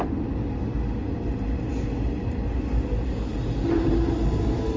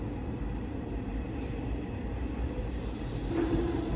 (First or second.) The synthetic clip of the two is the second